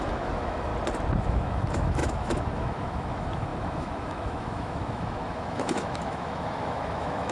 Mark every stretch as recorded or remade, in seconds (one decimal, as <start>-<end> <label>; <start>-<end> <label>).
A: 0.0-0.7 remade; 0.7-1.2 recorded; 1.2-7.3 remade